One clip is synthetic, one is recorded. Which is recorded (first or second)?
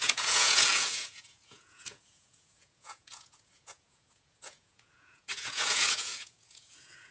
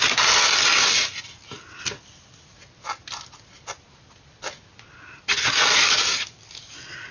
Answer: second